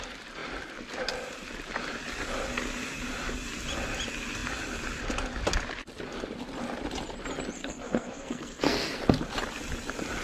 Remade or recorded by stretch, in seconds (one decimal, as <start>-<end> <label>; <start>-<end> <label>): 0.0-7.6 recorded; 7.6-9.0 remade; 9.0-10.2 recorded